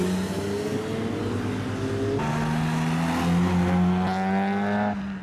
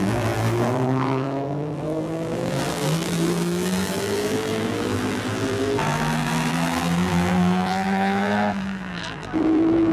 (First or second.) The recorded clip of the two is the first